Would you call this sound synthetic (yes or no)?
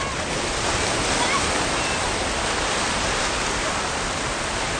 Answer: no